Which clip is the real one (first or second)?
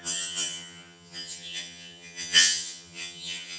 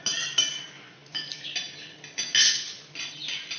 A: second